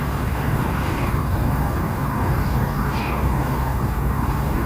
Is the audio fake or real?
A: fake